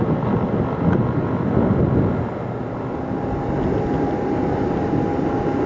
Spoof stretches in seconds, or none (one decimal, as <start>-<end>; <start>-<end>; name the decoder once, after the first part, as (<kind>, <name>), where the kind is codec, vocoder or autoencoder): none